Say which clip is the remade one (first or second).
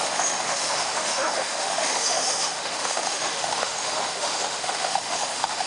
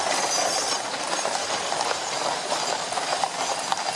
first